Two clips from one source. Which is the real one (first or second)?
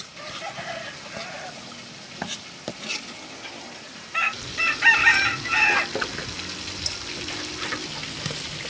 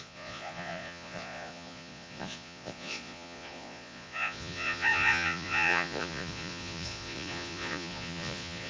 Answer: first